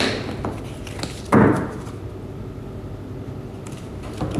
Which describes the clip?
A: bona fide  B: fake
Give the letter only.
A